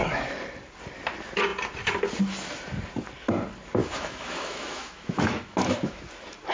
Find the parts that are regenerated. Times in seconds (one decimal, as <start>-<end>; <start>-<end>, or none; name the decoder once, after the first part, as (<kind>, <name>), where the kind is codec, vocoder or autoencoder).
3.8-6.0 (autoencoder, DAC-VAE)